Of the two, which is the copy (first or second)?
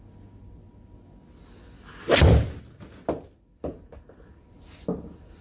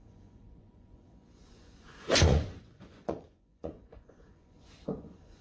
second